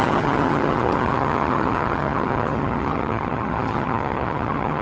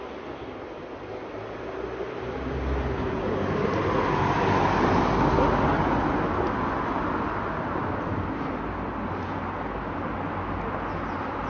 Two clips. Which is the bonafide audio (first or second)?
second